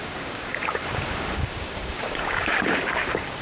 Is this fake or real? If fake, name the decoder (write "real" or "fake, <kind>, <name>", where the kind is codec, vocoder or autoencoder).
fake, codec, DAC